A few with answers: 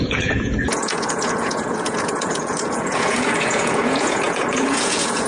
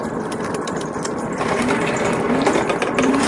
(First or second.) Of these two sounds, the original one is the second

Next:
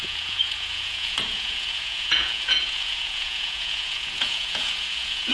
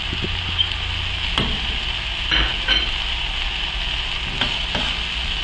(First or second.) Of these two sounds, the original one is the second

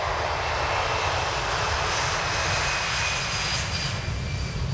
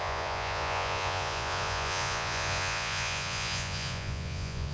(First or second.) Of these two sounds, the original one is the first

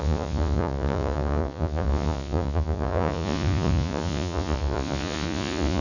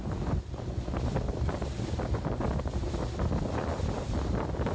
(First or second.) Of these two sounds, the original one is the second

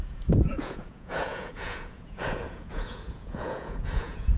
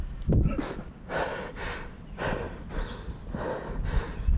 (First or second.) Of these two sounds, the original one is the second